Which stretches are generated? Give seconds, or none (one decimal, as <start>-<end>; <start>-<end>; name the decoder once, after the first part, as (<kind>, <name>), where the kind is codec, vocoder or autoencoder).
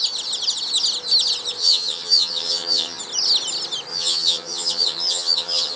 1.6-3.0 (vocoder, HiFi-GAN); 3.9-5.8